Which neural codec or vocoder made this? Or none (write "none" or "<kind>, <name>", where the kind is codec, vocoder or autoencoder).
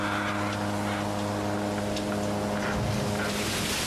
none